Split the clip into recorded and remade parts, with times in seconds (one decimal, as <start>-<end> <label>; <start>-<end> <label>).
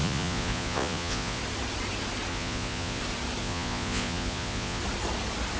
0.0-1.4 remade; 1.4-2.3 recorded; 2.3-3.0 remade; 3.0-3.4 recorded; 3.4-4.8 remade; 4.8-5.6 recorded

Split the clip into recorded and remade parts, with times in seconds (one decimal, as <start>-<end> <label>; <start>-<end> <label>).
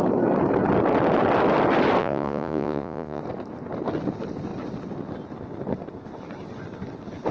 0.0-2.0 recorded; 2.0-3.2 remade; 3.2-7.3 recorded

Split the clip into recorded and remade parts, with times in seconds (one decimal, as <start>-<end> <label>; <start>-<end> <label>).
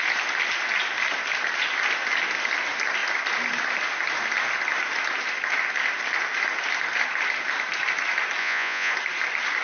0.0-8.4 recorded; 8.4-8.9 remade; 8.9-9.6 recorded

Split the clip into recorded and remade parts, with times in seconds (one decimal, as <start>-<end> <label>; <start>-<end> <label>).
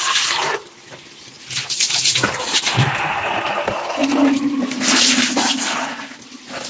0.0-6.7 recorded